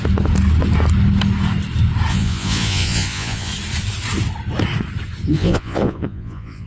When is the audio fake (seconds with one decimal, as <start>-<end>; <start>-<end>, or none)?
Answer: 2.1-3.5; 5.3-6.7